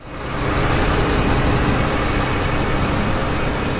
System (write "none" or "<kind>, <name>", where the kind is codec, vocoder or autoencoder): none